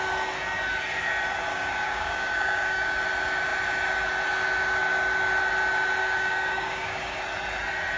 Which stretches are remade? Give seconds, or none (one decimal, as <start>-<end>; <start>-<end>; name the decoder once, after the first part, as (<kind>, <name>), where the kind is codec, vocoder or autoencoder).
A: 1.5-3.0 (codec, DAC); 6.0-7.2

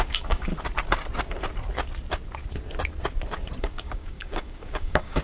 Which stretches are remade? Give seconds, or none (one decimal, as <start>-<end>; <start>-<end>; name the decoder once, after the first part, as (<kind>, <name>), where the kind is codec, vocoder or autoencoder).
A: 0.0-0.5 (codec, DAC); 3.6-5.2

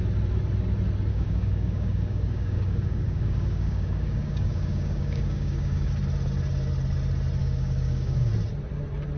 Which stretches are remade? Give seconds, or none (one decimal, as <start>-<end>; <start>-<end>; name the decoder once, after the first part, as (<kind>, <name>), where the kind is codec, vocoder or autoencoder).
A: 1.1-5.9 (codec, DAC); 7.4-8.3

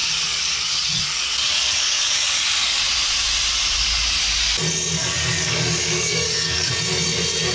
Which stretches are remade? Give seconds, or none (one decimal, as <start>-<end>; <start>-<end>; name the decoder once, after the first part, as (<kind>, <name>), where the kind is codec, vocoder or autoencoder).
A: 0.0-2.8 (codec, DAC); 5.0-6.7

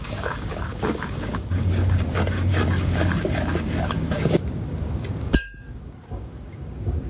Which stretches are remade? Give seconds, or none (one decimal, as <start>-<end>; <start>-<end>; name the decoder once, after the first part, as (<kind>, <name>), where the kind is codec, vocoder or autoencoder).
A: 0.0-7.1 (codec, DAC)

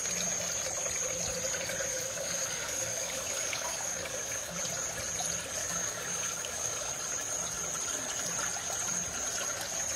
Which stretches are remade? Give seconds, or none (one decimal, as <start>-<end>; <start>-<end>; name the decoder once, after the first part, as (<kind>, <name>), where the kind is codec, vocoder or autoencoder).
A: 1.9-4.5 (codec, DAC); 5.6-6.9

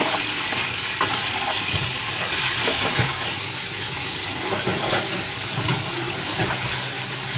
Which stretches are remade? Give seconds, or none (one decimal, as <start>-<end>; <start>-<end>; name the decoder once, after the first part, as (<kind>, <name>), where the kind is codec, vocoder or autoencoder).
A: 0.0-7.4 (codec, DAC)

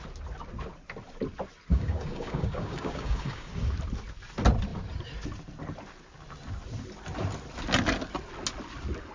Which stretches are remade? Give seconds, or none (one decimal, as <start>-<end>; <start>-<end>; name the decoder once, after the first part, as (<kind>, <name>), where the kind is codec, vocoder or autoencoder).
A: 1.7-3.5 (codec, DAC)